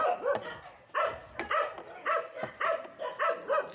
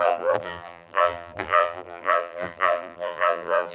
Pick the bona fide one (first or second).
first